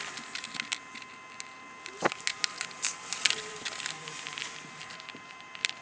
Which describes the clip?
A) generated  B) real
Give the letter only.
B